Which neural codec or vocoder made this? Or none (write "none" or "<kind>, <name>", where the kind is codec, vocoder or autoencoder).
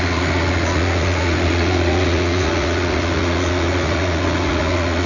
vocoder, Vocos